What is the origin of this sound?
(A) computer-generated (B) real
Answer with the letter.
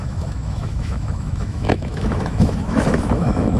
A